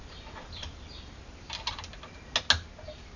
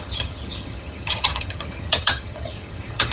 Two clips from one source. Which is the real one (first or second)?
first